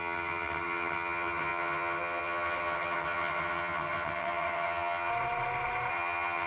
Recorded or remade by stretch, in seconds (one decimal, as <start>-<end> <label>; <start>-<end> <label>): 0.0-5.1 remade; 5.1-5.9 recorded; 5.9-6.5 remade